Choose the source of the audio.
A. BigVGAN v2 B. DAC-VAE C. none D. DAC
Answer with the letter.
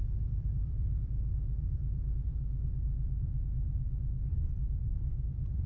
A